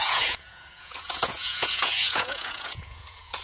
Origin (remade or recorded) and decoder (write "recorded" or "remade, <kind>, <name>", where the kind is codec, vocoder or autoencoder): remade, vocoder, Vocos